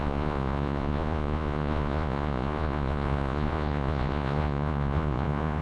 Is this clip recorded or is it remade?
remade